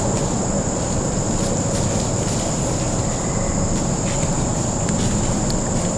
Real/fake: real